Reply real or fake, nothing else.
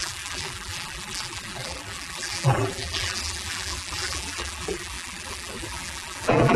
fake